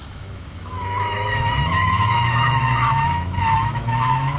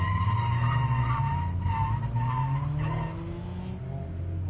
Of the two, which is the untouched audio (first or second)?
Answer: second